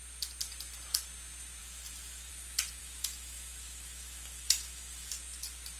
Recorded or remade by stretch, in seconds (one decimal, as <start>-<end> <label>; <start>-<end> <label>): 0.0-1.6 recorded; 1.6-2.3 remade; 2.3-2.8 recorded; 2.8-5.1 remade; 5.1-5.8 recorded

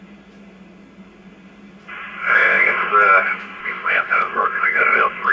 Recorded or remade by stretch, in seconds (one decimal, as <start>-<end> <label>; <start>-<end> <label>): 0.0-2.2 recorded; 2.2-2.9 remade; 2.9-3.6 recorded; 3.6-5.3 remade

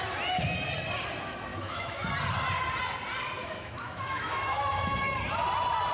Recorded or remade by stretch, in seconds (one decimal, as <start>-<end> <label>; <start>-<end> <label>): 0.0-1.5 recorded; 1.5-2.1 remade; 2.1-3.4 recorded; 3.4-5.2 remade; 5.2-5.9 recorded

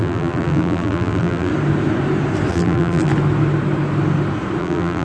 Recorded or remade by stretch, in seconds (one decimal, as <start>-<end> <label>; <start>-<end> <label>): 0.0-1.5 remade; 1.5-2.5 recorded; 2.5-3.1 remade; 3.1-4.6 recorded; 4.6-5.0 remade

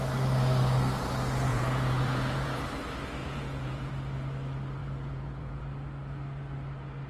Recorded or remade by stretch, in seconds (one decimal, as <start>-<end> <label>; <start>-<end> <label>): 0.0-1.5 recorded; 1.5-2.7 remade; 2.7-3.2 recorded; 3.2-3.9 remade; 3.9-4.8 recorded; 4.8-5.6 remade; 5.6-7.1 recorded

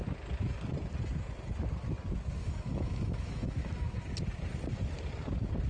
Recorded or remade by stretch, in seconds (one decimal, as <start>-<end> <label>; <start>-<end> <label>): 0.0-2.4 recorded; 2.4-4.0 remade; 4.0-5.7 recorded